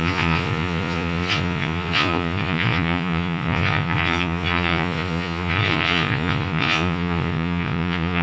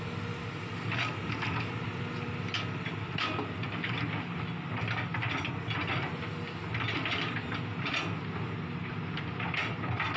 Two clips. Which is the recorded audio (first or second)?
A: second